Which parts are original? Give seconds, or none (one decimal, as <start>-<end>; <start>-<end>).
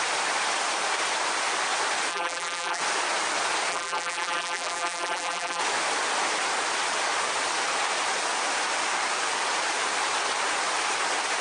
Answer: 0.0-2.1; 2.8-3.7; 5.6-11.4